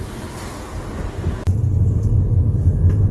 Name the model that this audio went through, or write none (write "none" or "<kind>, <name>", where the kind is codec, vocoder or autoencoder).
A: none